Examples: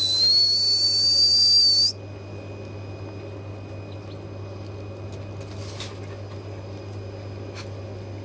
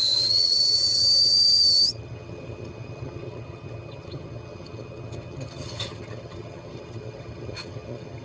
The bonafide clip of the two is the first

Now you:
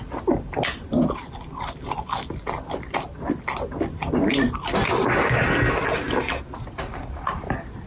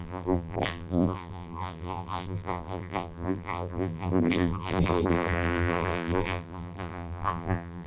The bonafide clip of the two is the first